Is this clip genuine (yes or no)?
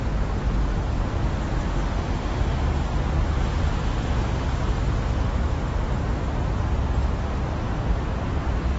yes